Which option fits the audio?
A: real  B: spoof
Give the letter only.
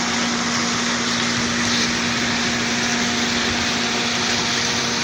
A